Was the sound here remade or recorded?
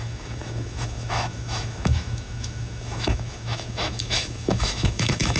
remade